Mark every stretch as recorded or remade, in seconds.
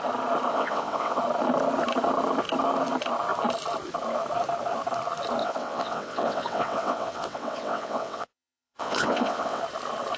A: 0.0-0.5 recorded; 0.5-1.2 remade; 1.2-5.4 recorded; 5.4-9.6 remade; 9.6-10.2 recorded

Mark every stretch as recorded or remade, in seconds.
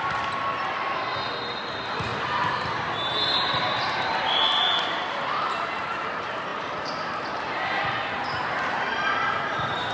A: 0.0-2.1 recorded; 2.1-2.6 remade; 2.6-9.9 recorded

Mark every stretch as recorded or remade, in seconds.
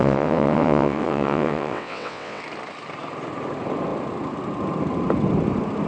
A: 0.0-2.4 remade; 2.4-5.9 recorded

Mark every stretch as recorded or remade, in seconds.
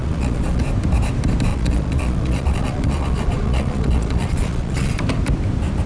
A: 0.0-0.6 remade; 0.6-1.5 recorded; 1.5-5.0 remade; 5.0-5.9 recorded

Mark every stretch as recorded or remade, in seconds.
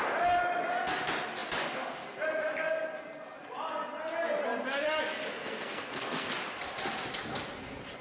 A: 0.0-5.3 recorded; 5.3-6.3 remade; 6.3-8.0 recorded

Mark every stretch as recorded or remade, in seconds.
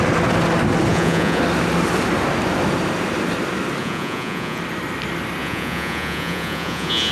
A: 0.0-0.9 recorded; 0.9-1.4 remade; 1.4-3.8 recorded; 3.8-4.6 remade; 4.6-5.4 recorded; 5.4-7.1 remade